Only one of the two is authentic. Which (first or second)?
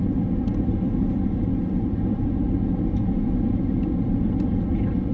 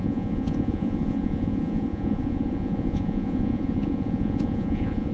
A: first